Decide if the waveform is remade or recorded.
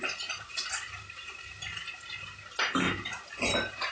recorded